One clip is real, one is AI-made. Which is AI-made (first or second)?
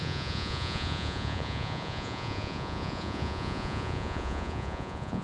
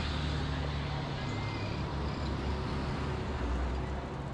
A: first